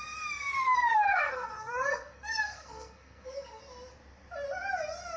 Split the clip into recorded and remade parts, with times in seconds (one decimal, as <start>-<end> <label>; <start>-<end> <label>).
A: 0.0-0.5 recorded; 0.5-3.6 remade; 3.6-5.2 recorded